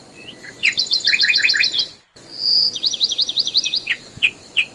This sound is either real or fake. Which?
fake